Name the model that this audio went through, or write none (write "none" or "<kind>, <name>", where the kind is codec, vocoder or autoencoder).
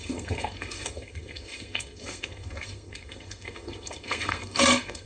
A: codec, SNAC